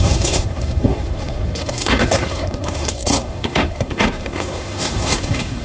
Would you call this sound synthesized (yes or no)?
yes